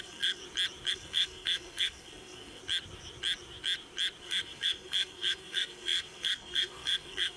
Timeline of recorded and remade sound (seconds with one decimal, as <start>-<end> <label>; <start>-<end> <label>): 0.0-0.4 remade; 0.4-0.9 recorded; 0.9-2.6 remade; 2.6-4.2 recorded; 4.2-7.4 remade